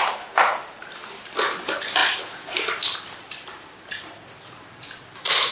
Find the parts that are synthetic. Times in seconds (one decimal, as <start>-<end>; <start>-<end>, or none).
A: 2.0-5.5